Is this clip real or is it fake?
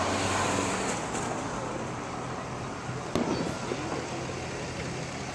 real